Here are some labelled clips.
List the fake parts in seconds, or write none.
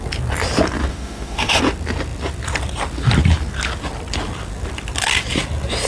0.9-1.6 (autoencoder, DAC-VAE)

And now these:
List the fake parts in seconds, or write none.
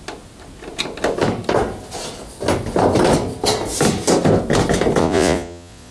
5.0-5.9 (vocoder, Vocos)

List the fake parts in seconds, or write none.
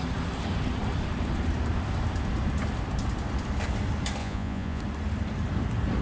4.2-4.8 (vocoder, Vocos)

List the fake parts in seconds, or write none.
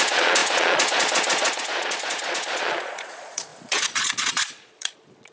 0.0-5.3 (vocoder, Vocos)